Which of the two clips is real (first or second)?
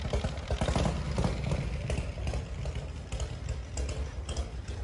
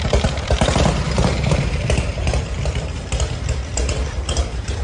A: first